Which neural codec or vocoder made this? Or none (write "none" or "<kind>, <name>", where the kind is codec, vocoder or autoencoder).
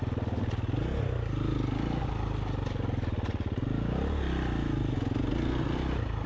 none